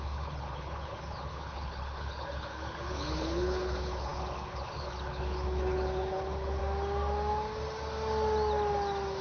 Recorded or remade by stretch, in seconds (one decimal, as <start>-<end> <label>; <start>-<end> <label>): 0.0-6.6 remade; 6.6-9.2 recorded